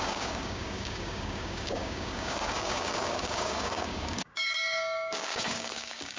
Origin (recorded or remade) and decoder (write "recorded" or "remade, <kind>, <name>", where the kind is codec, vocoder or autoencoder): remade, codec, DAC